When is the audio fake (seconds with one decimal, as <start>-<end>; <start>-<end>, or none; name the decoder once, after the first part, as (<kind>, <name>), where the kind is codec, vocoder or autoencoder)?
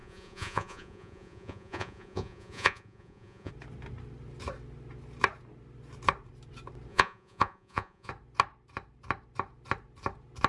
0.0-3.5 (vocoder, Vocos); 6.9-8.1